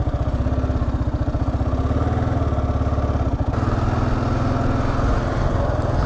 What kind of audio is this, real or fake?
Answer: real